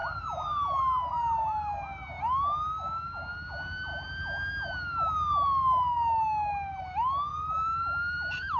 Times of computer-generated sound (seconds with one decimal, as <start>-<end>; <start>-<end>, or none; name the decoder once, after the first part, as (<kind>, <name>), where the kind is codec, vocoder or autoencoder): 0.0-0.8 (vocoder, BigVGAN v2); 7.3-8.6